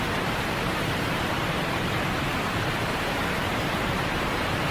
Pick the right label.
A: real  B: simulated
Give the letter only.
B